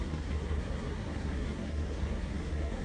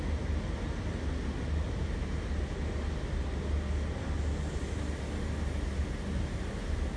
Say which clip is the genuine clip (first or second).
second